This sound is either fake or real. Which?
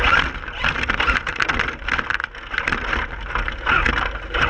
real